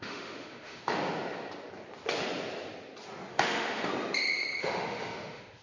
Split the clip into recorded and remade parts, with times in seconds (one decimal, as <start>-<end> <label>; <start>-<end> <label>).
0.0-1.0 remade; 1.0-3.3 recorded; 3.3-3.9 remade; 3.9-4.6 recorded; 4.6-5.6 remade